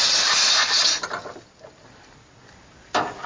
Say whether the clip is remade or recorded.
recorded